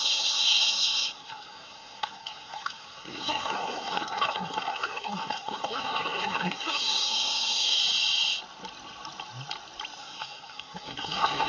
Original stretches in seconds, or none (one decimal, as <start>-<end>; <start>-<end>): 7.8-10.0